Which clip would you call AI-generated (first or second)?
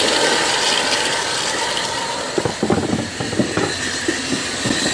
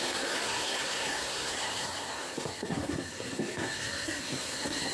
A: second